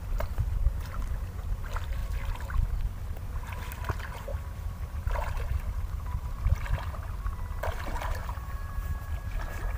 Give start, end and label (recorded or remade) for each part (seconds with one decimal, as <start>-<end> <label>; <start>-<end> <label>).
0.0-8.2 recorded; 8.2-9.8 remade